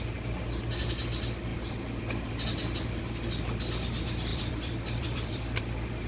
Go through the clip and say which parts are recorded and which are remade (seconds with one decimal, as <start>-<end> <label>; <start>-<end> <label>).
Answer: 0.0-1.5 recorded; 1.5-2.3 remade; 2.3-4.3 recorded; 4.3-5.6 remade; 5.6-6.1 recorded